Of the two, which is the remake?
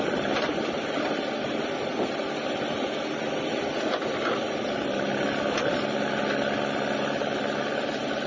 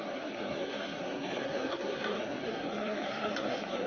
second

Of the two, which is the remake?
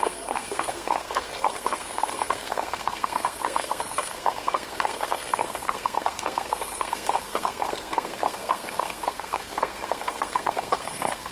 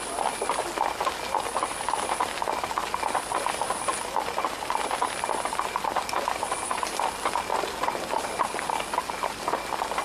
first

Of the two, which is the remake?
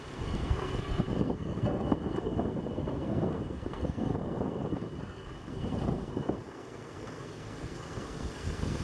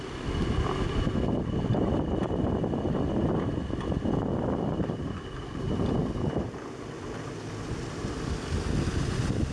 first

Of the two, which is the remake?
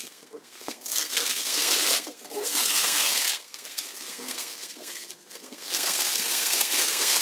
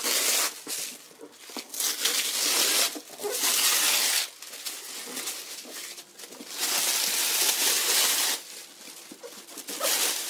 first